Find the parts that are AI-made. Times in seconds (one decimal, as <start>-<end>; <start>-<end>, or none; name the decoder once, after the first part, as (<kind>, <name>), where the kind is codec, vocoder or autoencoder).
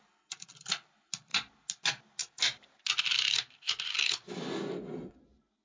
none